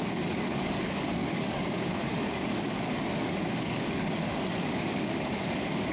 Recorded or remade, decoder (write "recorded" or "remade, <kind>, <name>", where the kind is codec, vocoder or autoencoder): remade, codec, DAC